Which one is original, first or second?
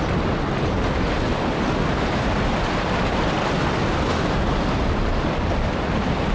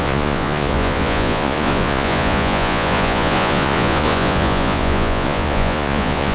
first